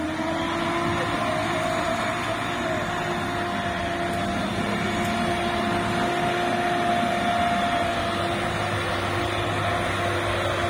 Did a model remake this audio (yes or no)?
no